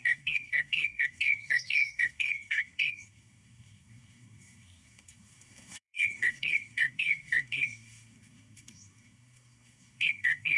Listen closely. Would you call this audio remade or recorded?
remade